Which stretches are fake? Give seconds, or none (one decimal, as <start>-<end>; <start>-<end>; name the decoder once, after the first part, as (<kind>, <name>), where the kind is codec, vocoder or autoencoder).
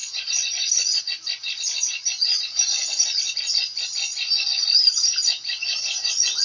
none